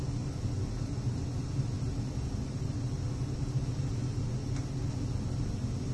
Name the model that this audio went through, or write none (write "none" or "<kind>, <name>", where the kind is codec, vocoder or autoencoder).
none